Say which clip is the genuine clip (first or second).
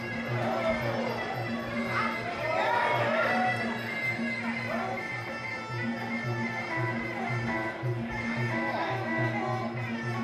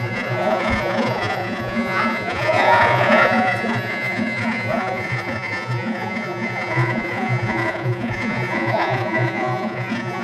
first